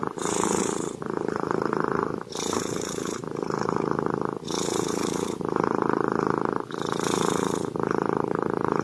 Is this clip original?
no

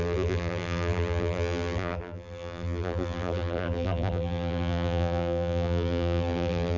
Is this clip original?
no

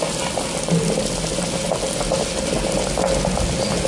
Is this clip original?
yes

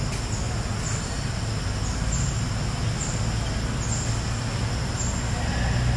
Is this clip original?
yes